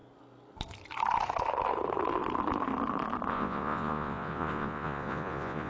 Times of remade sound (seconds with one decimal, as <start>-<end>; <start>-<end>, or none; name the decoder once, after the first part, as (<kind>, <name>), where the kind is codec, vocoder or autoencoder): 3.3-5.7 (vocoder, Vocos)